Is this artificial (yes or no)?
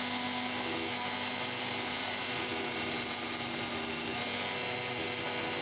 no